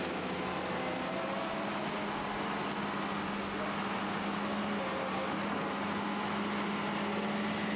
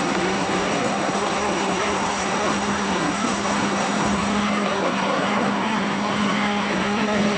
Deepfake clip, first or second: second